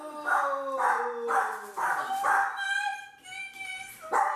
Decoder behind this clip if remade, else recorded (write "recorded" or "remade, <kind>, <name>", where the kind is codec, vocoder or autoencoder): recorded